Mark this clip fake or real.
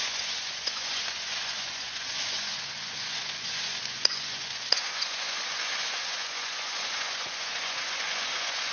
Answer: fake